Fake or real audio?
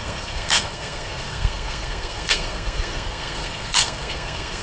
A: fake